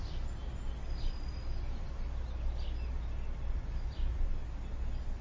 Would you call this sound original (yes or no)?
yes